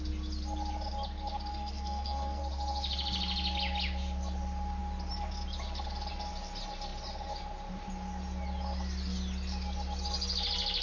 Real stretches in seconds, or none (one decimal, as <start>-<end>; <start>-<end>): 0.0-1.5; 2.4-10.8